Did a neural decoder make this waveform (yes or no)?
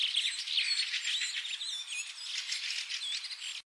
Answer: no